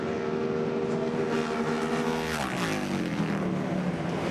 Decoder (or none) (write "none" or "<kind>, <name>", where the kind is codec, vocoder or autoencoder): none